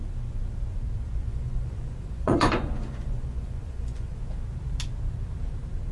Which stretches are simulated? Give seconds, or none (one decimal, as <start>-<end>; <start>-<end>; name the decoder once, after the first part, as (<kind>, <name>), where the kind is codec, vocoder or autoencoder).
1.2-4.2 (vocoder, Vocos)